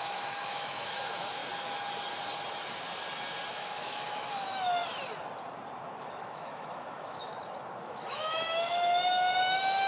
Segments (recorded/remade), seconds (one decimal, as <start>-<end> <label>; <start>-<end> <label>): 0.0-1.4 remade; 1.4-3.5 recorded; 3.5-4.8 remade; 4.8-6.0 recorded; 6.0-7.3 remade; 7.3-7.8 recorded; 7.8-9.9 remade